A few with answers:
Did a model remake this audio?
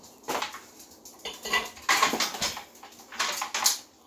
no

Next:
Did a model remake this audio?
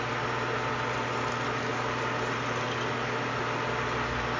no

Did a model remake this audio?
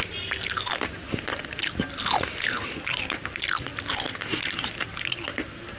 no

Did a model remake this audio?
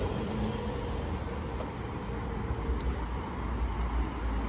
no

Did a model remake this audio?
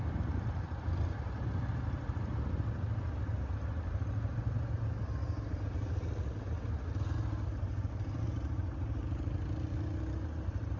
no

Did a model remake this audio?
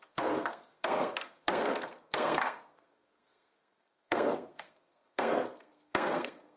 yes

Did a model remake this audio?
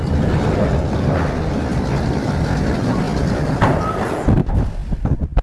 no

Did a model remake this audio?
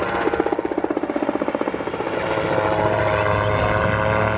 no